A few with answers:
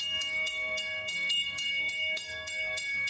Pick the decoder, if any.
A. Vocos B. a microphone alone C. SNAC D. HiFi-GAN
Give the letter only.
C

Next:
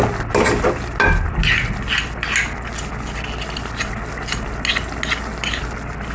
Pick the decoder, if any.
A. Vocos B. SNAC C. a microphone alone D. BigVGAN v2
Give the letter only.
C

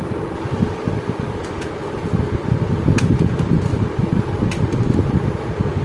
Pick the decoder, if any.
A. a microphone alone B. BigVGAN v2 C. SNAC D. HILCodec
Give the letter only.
A